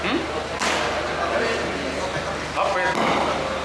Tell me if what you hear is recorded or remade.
recorded